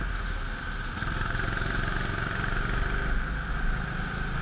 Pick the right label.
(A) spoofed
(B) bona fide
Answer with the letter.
B